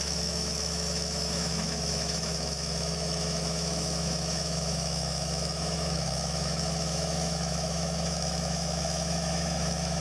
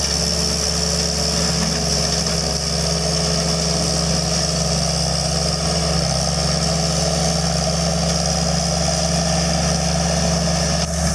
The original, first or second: second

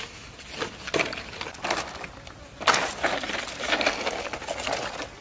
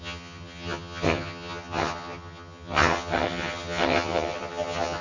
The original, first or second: first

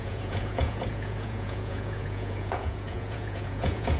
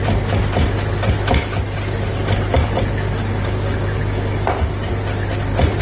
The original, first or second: second